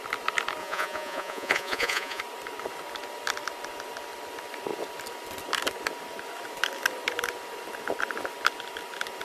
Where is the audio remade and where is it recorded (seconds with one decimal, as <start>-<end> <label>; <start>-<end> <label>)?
0.0-0.6 recorded; 0.6-2.2 remade; 2.2-9.2 recorded